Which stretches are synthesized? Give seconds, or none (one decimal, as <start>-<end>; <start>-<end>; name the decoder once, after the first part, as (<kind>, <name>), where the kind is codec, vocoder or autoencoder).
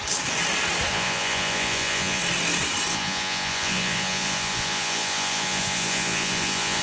0.9-2.2 (vocoder, Vocos); 2.9-6.8